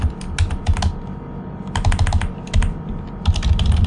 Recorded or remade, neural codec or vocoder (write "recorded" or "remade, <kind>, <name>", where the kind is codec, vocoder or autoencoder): recorded